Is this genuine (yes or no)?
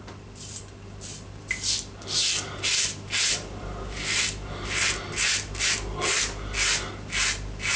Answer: yes